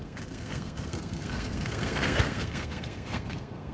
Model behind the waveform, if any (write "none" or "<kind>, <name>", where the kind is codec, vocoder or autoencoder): codec, SNAC